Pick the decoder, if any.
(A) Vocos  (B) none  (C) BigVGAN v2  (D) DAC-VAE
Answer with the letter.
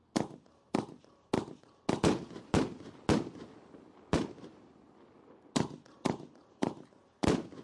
B